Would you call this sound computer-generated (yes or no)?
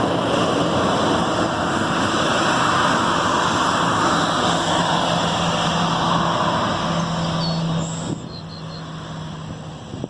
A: no